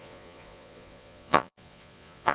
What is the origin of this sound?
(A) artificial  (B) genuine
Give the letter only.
A